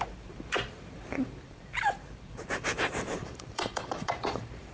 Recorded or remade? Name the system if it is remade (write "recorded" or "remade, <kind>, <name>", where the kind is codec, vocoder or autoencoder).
remade, vocoder, BigVGAN v2